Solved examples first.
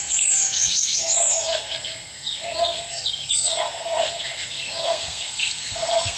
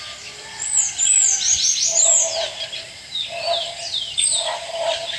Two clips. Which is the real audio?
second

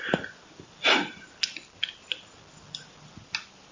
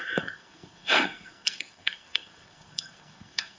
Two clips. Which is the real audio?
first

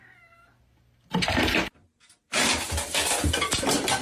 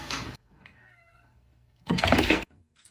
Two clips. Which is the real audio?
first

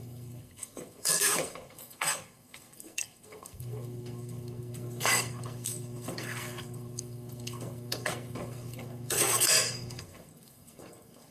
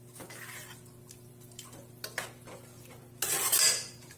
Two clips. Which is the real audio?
second